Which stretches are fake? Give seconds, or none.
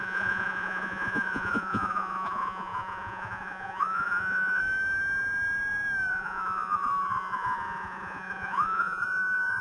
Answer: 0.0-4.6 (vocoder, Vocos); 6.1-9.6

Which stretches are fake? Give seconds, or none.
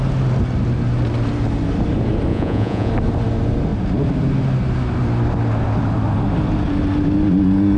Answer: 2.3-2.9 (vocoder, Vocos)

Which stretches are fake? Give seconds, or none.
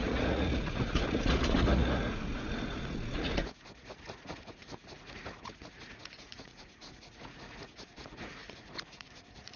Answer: 0.0-9.6 (vocoder, Vocos)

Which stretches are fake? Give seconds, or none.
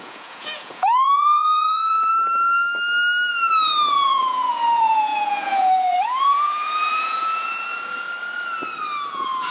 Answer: 0.0-2.1 (vocoder, Vocos); 3.9-7.7; 9.1-9.5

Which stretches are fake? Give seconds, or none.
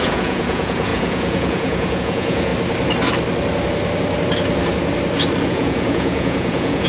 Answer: 0.0-2.5 (vocoder, Vocos); 5.5-6.9